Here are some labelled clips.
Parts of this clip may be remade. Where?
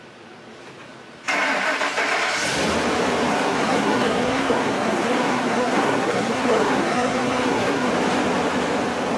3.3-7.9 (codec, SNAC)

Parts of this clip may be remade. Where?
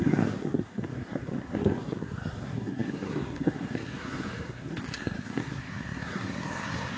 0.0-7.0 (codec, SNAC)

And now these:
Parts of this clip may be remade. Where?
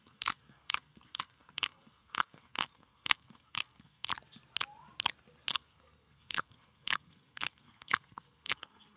0.0-4.1 (codec, SNAC); 5.5-9.0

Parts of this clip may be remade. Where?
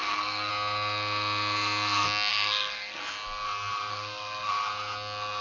0.0-0.5 (codec, SNAC); 2.3-3.0; 3.9-4.5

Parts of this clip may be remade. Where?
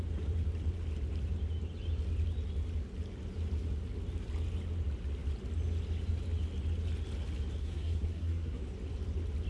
7.6-8.6 (codec, SNAC)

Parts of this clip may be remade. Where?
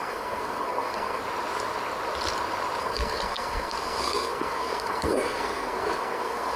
0.0-1.2 (codec, SNAC); 2.8-6.6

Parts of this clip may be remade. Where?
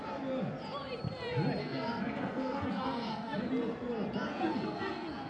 1.6-3.5 (codec, SNAC); 4.3-5.3